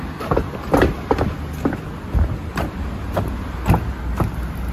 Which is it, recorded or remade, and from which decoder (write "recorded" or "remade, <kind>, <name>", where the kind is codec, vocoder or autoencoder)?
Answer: recorded